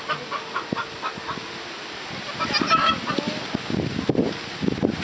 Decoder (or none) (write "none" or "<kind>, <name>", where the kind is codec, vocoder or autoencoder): none